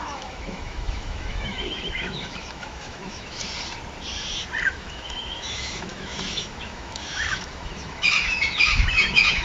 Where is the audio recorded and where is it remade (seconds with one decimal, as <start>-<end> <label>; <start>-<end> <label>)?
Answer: 0.0-3.4 remade; 3.4-4.6 recorded; 4.6-9.4 remade